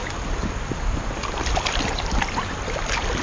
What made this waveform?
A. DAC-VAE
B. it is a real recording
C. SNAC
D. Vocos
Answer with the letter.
B